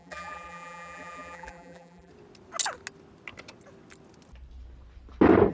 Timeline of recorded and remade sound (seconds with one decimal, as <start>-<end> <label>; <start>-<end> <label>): 0.0-2.1 remade; 2.1-5.5 recorded